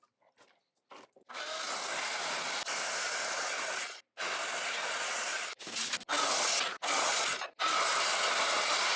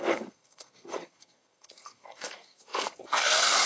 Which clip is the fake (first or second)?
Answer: second